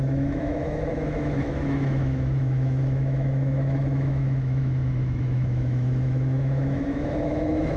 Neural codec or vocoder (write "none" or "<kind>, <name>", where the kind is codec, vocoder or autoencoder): autoencoder, DAC-VAE